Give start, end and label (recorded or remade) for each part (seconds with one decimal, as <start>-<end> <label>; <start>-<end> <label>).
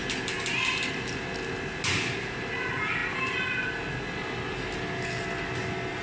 0.0-6.0 recorded